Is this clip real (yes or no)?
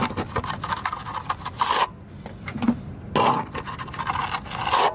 yes